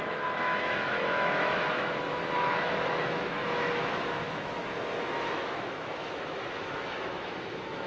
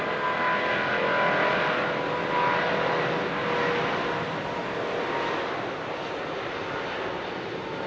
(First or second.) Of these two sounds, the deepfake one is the first